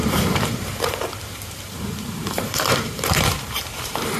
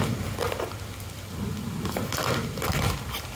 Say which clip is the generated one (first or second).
first